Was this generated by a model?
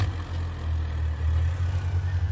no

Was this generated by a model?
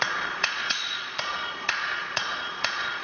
yes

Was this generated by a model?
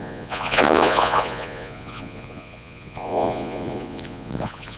yes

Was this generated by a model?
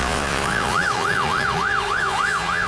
yes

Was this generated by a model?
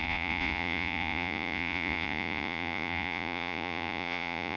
yes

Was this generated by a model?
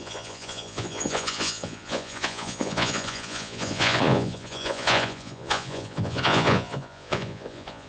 yes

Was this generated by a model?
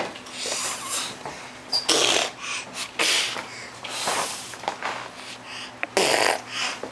no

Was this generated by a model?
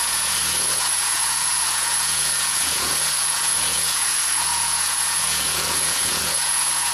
yes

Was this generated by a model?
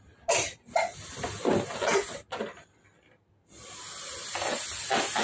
no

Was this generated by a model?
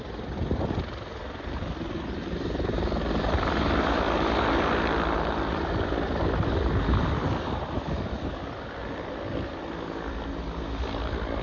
no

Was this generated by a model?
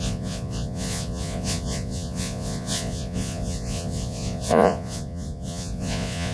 yes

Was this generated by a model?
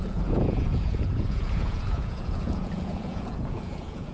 yes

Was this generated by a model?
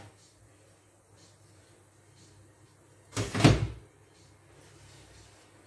no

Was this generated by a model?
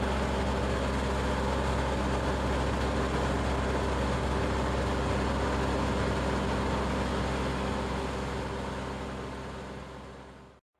no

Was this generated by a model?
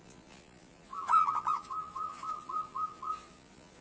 yes